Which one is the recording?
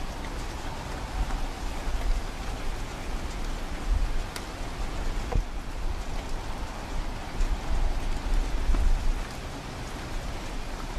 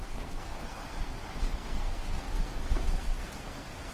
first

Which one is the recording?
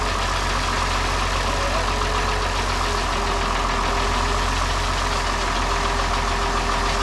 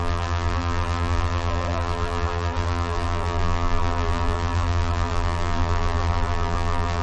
first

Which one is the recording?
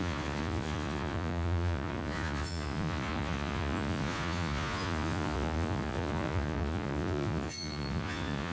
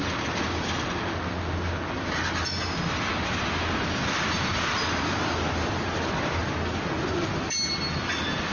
second